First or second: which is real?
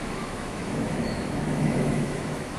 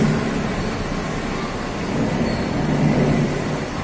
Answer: second